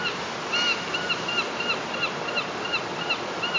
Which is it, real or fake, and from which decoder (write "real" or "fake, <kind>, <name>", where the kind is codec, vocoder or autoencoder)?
real